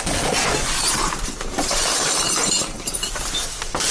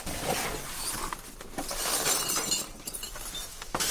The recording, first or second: second